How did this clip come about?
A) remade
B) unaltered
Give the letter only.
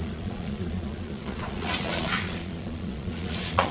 A